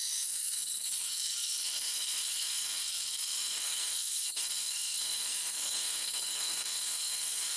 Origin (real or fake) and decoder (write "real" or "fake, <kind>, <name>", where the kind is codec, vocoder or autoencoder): fake, codec, SNAC